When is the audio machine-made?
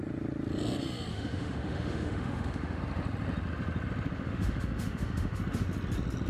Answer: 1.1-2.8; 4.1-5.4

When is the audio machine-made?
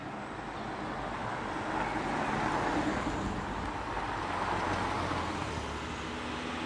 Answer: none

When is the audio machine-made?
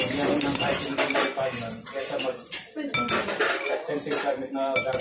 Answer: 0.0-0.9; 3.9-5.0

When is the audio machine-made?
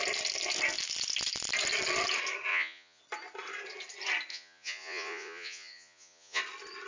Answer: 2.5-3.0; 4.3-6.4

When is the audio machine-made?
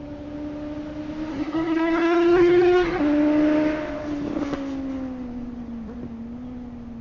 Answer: 1.3-3.0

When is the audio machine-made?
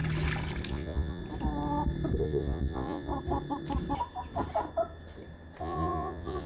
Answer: 0.7-1.2; 2.2-3.1; 5.6-6.5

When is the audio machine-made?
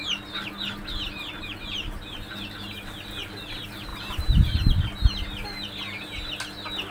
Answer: none